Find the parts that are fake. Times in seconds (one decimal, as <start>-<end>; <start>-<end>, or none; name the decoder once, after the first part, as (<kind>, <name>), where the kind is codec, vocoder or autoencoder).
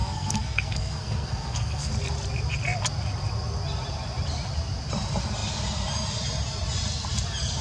0.0-1.9 (codec, SNAC)